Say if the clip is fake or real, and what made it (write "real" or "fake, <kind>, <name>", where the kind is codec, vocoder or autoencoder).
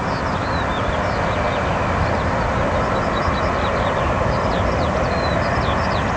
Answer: real